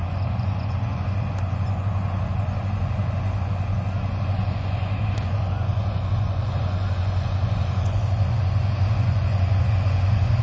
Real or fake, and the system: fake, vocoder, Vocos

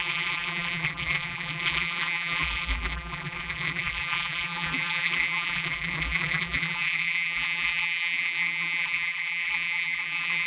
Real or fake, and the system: fake, vocoder, BigVGAN v2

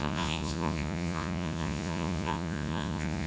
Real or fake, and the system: fake, vocoder, Vocos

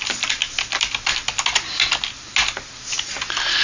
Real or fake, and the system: real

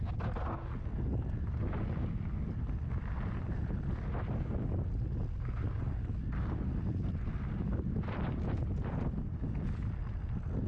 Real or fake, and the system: real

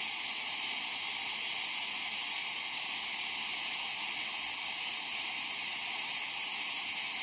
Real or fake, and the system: real